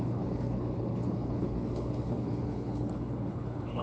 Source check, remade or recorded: remade